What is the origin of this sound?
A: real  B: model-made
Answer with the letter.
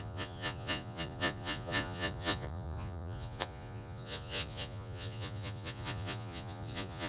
B